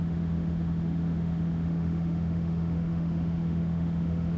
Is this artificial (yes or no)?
yes